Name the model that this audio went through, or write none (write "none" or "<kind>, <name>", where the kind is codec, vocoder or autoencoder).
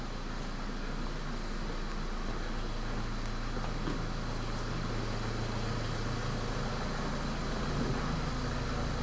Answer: none